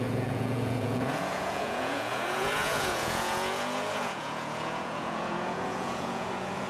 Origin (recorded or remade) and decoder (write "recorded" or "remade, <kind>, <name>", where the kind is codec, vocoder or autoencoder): remade, vocoder, Vocos